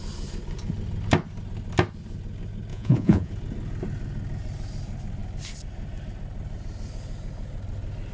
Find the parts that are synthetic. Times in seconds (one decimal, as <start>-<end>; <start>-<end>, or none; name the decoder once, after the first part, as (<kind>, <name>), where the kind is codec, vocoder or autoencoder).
2.7-3.3 (vocoder, Vocos)